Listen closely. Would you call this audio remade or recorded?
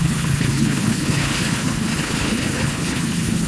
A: remade